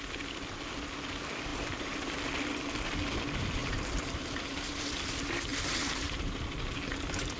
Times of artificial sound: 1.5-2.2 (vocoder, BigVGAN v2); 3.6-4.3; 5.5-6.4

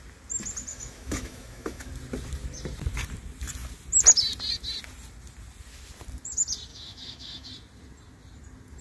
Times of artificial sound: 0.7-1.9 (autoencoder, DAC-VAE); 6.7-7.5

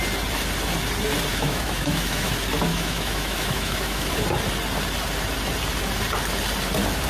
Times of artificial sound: 1.3-2.3 (autoencoder, DAC-VAE); 2.7-4.1

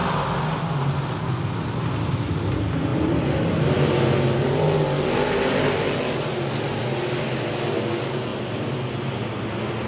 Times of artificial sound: none

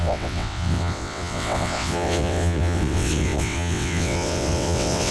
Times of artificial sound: 0.0-5.1 (vocoder, WaveNeXt)

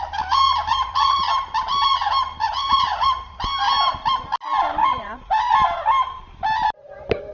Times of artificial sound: 0.7-1.3 (vocoder, Vocos); 2.4-3.4; 4.8-5.5

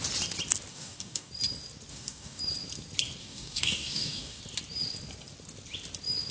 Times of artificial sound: 0.7-1.3 (codec, DAC); 1.9-2.4; 3.2-4.4

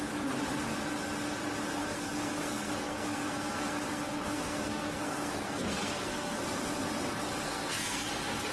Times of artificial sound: 1.8-6.4 (codec, SNAC); 7.4-8.1